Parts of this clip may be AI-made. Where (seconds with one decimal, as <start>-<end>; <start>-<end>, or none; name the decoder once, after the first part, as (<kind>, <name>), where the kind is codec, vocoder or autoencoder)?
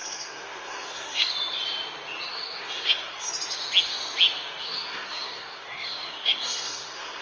0.0-1.3 (codec, SNAC); 2.3-3.3; 4.6-7.2